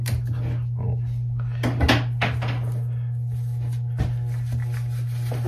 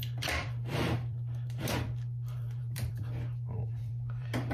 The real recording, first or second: first